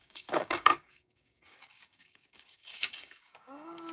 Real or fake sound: fake